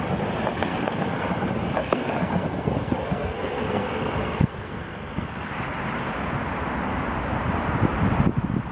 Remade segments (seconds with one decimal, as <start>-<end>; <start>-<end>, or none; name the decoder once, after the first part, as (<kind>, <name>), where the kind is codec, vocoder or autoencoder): 0.5-1.3 (codec, SNAC); 1.8-5.5